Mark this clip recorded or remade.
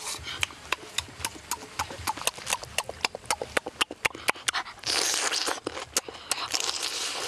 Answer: recorded